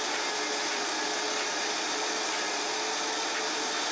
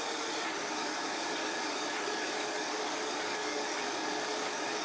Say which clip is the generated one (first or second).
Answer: second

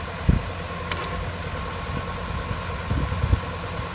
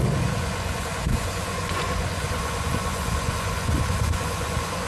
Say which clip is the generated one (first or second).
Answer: second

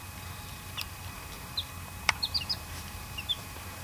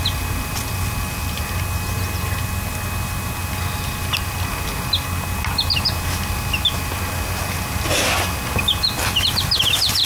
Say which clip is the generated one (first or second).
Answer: first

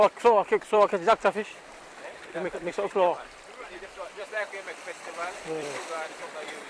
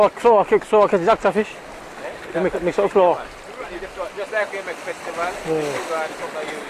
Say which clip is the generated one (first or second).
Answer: first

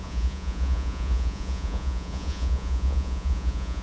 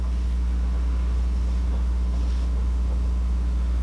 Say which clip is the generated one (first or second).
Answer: first